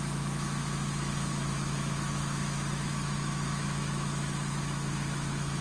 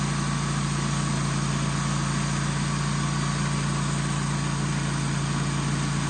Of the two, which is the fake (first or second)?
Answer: first